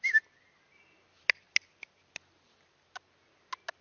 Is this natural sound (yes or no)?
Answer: yes